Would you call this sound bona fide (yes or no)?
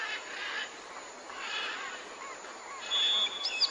yes